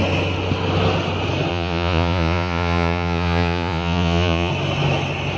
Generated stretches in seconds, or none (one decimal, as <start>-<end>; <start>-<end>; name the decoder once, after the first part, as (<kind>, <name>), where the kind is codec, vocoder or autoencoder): 1.5-4.5 (vocoder, Vocos)